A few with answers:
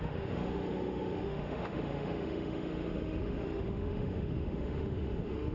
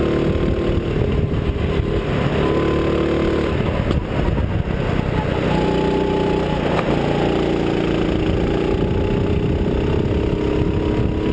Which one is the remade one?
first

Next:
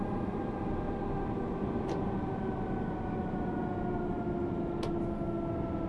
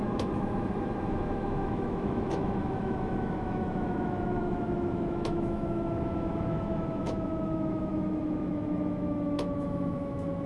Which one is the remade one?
second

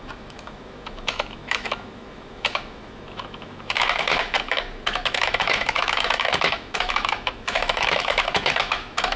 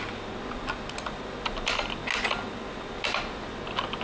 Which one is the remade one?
first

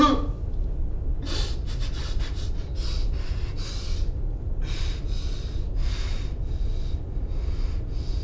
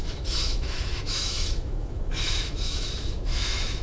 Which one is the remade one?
second